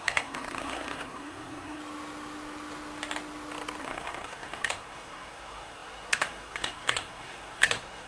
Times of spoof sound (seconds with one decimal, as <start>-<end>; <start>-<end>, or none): 0.0-1.8; 3.8-8.1